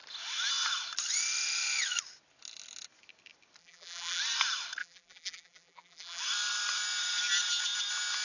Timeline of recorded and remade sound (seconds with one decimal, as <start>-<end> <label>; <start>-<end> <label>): 0.0-3.6 recorded; 3.6-4.2 remade; 4.2-4.8 recorded; 4.8-6.2 remade; 6.2-8.2 recorded